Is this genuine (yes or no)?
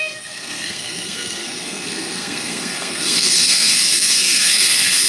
no